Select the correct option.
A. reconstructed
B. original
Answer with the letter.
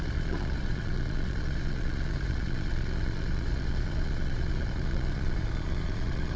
A